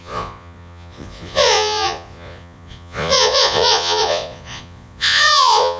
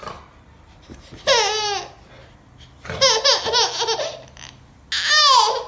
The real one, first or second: second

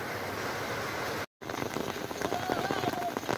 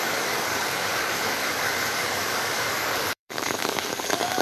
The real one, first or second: first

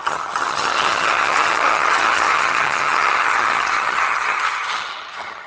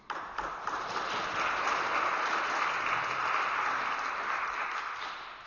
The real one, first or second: second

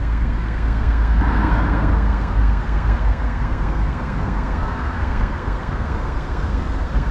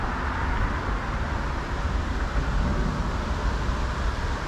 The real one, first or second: second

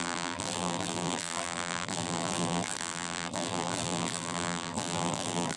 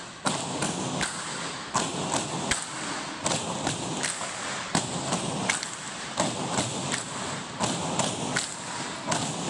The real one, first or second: second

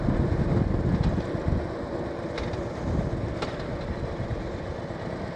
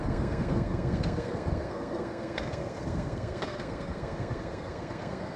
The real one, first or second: first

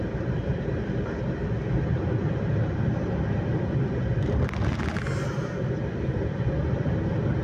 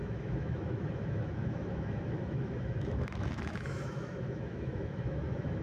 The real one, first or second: first